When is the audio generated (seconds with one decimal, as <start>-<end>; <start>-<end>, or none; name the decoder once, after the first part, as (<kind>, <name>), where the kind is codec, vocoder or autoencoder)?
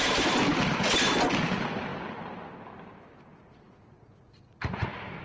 3.3-5.2 (vocoder, Vocos)